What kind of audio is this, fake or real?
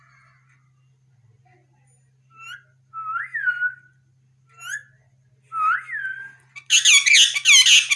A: real